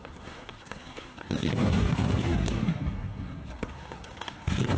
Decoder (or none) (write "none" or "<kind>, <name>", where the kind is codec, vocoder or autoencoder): codec, SNAC